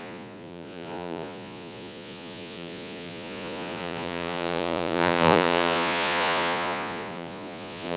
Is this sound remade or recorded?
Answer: remade